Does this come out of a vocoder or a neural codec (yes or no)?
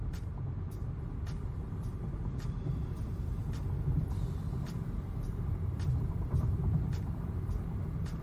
yes